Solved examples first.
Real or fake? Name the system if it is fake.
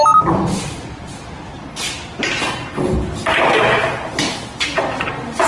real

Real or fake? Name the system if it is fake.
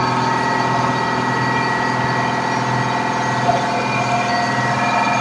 real